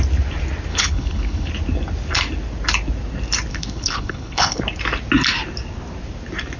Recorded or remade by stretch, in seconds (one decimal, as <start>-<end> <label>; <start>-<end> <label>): 0.0-0.7 recorded; 0.7-1.5 remade; 1.5-3.5 recorded; 3.5-4.6 remade; 4.6-6.6 recorded